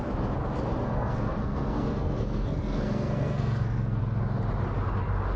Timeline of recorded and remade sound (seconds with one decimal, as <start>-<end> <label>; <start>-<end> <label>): 0.0-0.8 recorded; 0.8-4.0 remade; 4.0-5.4 recorded